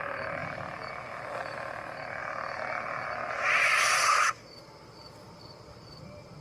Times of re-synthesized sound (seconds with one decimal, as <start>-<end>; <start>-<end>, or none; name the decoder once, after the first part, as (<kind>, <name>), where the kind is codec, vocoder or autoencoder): 0.4-0.9 (vocoder, BigVGAN v2); 2.2-6.0